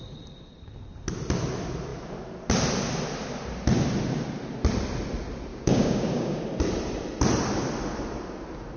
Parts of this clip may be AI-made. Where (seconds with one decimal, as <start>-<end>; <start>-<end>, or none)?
5.5-6.4